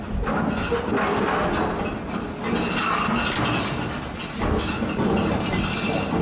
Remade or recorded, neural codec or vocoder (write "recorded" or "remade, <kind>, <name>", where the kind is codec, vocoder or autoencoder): recorded